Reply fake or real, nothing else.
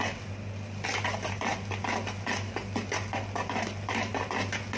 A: real